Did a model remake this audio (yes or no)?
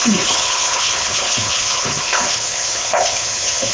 yes